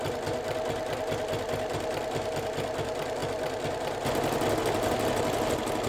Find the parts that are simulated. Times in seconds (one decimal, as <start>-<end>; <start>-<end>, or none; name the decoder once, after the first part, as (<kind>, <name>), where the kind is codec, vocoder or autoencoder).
none

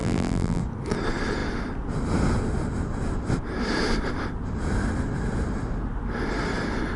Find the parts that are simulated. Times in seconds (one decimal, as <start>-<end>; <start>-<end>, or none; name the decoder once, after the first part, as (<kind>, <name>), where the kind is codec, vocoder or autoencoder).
0.0-0.6 (vocoder, BigVGAN v2)

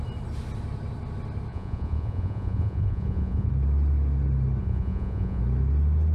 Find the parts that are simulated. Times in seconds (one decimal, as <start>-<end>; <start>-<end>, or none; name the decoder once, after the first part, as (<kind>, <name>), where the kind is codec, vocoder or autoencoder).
1.5-3.5 (vocoder, Vocos); 4.6-5.4

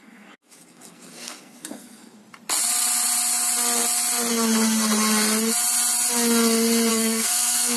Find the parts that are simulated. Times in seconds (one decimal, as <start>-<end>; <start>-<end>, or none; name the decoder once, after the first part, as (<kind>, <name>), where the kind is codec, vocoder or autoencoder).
0.0-2.2 (codec, SNAC); 6.9-7.8